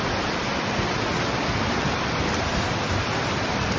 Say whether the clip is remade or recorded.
remade